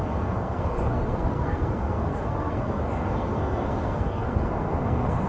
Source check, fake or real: fake